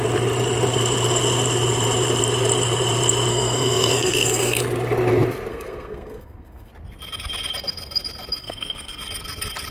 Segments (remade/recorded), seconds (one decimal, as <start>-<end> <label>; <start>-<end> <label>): 0.0-3.3 recorded; 3.3-4.6 remade; 4.6-5.5 recorded; 5.5-6.7 remade; 6.7-8.4 recorded; 8.4-9.0 remade; 9.0-9.7 recorded